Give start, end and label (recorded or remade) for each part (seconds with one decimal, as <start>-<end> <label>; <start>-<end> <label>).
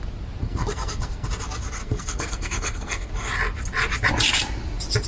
0.0-0.4 recorded; 0.4-1.3 remade; 1.3-1.8 recorded; 1.8-3.1 remade; 3.1-5.1 recorded